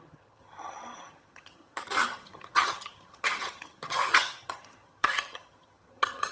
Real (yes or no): no